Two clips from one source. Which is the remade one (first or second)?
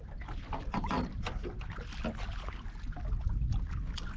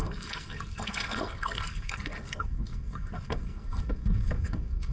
second